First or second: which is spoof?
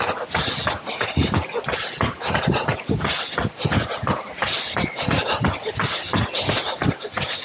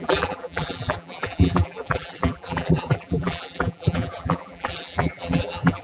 second